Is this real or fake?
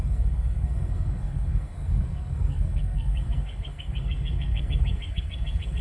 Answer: fake